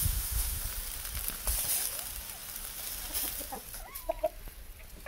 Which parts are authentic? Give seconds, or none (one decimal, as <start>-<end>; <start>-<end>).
0.6-5.1

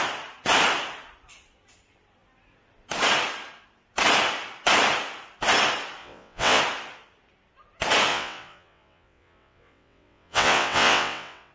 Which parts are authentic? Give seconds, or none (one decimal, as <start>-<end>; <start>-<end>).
0.0-6.0; 6.6-8.1

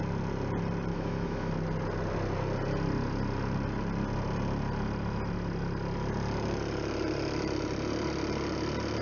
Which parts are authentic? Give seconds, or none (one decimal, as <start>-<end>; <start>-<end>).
0.0-0.9; 1.5-9.0

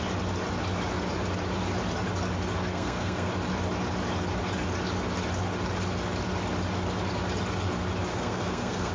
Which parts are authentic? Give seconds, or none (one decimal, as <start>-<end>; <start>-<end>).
0.0-2.7; 3.3-8.1

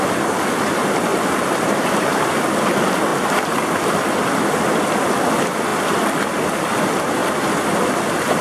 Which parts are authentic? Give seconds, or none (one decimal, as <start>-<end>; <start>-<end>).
0.0-7.2; 8.0-8.4

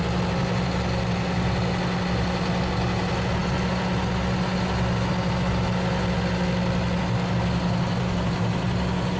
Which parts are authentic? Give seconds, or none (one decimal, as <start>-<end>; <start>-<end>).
0.0-9.2